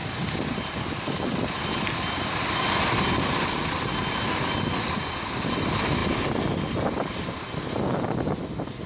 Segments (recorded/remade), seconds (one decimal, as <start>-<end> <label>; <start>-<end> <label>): 0.0-8.9 recorded